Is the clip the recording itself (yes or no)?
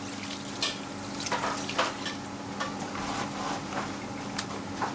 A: yes